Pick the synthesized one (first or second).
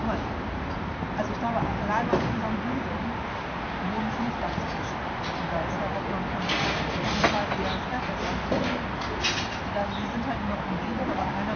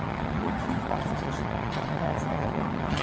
second